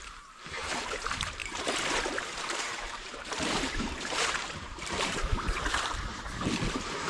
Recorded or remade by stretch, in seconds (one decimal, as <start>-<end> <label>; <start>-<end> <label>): 0.0-7.1 remade